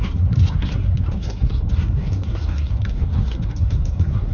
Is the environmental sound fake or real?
fake